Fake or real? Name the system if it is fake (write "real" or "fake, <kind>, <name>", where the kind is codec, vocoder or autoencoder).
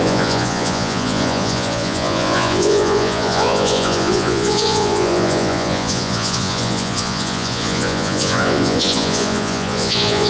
fake, vocoder, Vocos